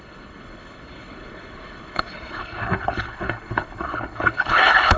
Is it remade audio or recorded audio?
remade